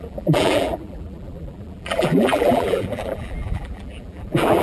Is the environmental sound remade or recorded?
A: remade